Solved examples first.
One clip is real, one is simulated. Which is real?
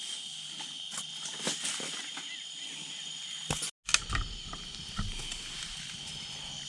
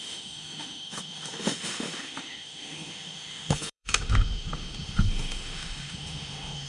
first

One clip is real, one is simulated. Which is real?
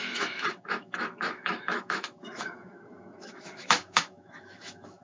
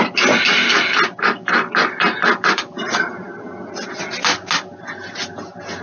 second